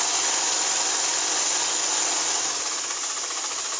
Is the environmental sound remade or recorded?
recorded